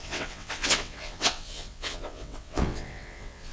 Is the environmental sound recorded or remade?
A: remade